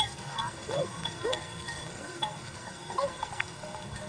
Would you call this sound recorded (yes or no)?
no